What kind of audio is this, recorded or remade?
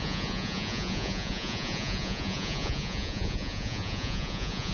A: remade